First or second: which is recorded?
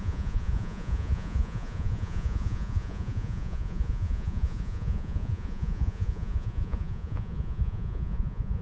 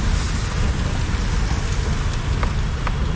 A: second